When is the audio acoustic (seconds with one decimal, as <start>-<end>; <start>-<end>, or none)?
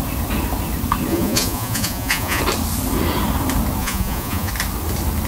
0.0-1.1; 2.4-3.8; 4.5-5.3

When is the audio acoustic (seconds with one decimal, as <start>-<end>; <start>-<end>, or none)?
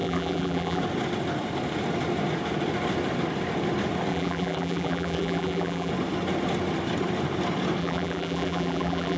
0.8-4.1; 5.9-7.8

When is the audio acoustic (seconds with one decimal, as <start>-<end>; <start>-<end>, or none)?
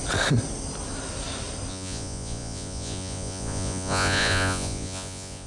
0.0-1.7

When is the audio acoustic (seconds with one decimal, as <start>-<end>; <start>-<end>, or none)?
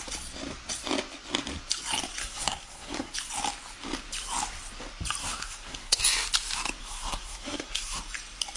0.0-2.2; 3.1-5.2; 6.0-6.8; 8.0-8.6